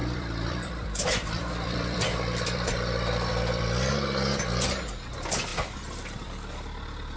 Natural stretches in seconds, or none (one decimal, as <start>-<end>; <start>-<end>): 3.9-5.5